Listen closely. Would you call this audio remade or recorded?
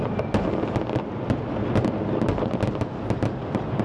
recorded